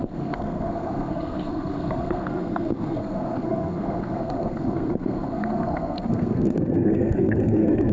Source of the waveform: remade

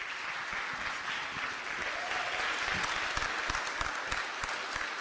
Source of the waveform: recorded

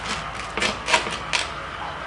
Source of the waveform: recorded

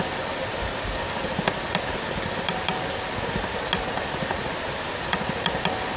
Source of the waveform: recorded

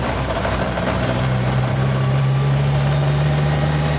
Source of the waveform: remade